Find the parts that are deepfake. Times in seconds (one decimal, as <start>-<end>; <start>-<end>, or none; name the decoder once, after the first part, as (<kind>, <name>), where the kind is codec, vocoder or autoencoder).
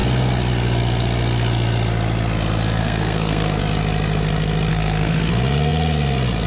2.8-3.6 (codec, SNAC); 4.7-5.3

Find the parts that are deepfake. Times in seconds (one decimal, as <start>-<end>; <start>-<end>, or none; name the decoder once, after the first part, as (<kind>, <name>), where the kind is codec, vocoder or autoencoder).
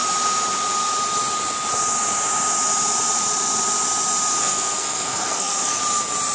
4.4-5.8 (codec, SNAC)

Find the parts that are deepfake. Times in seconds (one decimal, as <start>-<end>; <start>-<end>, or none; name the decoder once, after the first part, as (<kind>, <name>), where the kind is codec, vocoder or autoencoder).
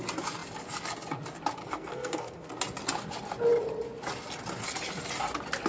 1.6-2.5 (codec, SNAC)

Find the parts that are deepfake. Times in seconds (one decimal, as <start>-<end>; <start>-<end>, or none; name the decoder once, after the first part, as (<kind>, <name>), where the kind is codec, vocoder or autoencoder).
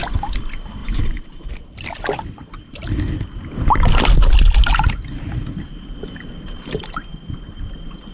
none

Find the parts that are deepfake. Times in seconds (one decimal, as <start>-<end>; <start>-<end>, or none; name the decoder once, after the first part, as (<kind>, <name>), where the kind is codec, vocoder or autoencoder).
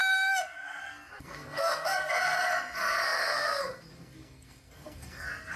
0.0-5.6 (codec, SNAC)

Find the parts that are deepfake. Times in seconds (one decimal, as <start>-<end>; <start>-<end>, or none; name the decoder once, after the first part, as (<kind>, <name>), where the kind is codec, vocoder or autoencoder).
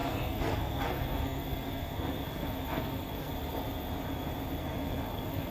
0.0-3.3 (codec, SNAC); 4.6-5.5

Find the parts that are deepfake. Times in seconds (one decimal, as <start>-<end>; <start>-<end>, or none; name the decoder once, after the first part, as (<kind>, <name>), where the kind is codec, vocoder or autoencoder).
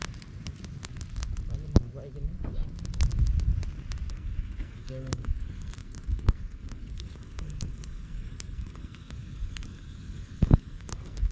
4.1-11.3 (codec, SNAC)